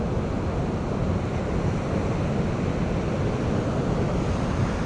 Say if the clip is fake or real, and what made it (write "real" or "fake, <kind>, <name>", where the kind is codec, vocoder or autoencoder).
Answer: real